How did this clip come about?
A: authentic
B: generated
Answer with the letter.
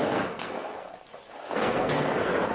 B